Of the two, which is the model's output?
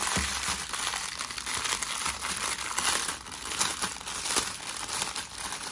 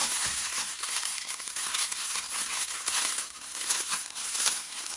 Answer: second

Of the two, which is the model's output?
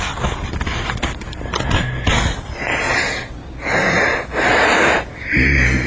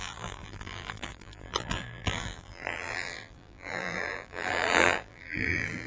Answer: second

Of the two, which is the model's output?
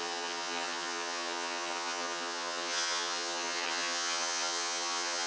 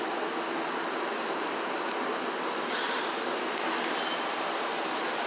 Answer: first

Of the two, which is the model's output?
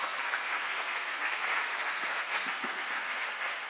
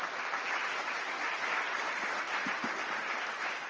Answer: first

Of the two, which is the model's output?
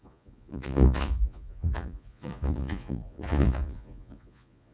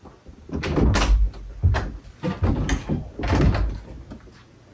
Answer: first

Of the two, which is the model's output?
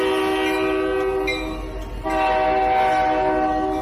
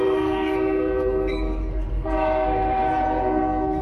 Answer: second